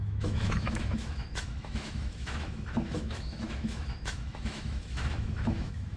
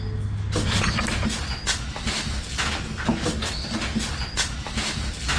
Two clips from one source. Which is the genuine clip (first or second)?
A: second